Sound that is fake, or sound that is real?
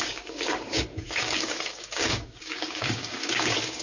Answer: fake